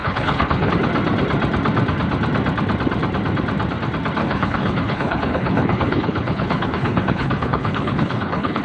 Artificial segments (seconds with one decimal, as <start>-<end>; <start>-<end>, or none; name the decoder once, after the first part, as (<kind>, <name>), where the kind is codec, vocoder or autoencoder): 0.0-0.7 (codec, HILCodec); 4.2-8.6